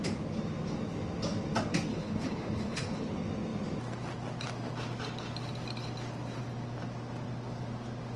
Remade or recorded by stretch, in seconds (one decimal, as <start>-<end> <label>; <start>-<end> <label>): 0.0-1.9 recorded; 1.9-3.1 remade; 3.1-8.2 recorded